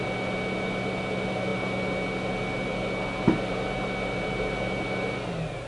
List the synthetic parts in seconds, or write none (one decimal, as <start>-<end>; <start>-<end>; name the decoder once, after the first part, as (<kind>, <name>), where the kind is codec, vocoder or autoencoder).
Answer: none